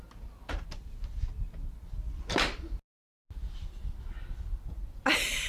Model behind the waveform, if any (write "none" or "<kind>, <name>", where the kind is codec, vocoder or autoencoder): none